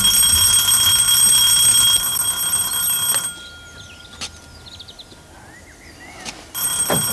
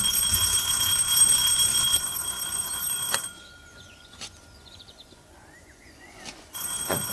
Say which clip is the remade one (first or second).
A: second